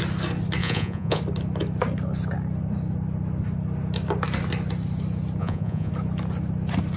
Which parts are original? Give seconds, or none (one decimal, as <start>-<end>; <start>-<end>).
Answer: 0.0-0.6; 1.2-5.4; 5.9-7.0